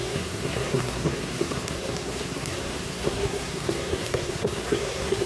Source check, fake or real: fake